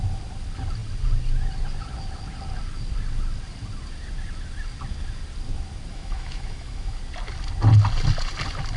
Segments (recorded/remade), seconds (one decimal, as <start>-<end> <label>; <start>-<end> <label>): 0.0-5.9 recorded; 5.9-7.0 remade; 7.0-8.8 recorded